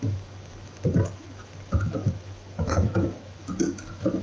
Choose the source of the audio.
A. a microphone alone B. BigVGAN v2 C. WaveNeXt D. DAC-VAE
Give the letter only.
D